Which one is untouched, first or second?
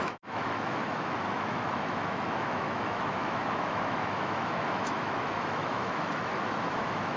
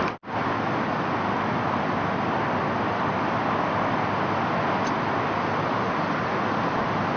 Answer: second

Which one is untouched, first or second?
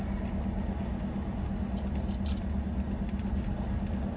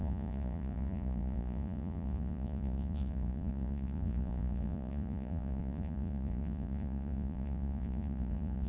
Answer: first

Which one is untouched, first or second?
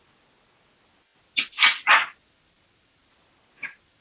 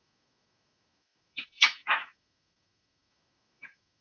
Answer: first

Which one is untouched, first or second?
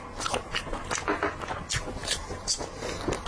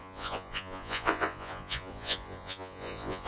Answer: first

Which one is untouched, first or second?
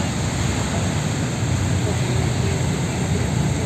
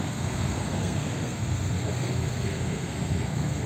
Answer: first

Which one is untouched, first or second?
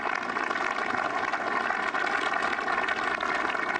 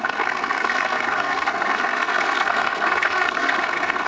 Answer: first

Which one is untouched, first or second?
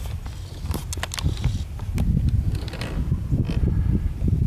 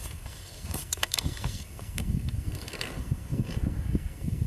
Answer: first